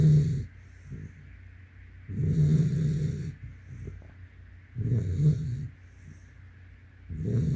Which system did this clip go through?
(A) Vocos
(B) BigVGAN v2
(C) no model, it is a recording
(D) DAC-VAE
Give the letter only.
C